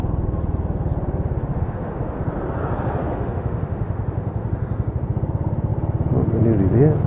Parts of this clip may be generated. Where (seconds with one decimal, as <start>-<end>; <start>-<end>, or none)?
1.5-2.2; 3.0-4.5